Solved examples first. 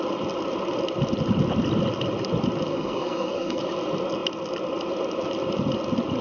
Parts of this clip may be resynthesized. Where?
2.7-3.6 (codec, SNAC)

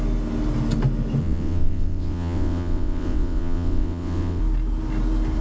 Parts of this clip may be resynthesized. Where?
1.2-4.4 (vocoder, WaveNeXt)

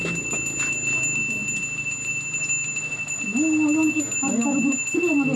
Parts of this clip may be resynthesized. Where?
none